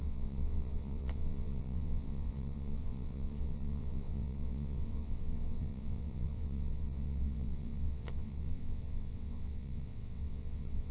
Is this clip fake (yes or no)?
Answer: yes